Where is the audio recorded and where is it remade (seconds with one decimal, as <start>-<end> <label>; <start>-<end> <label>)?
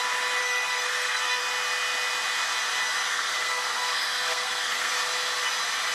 0.0-0.4 recorded; 0.4-1.4 remade; 1.4-3.1 recorded; 3.1-4.9 remade; 4.9-5.9 recorded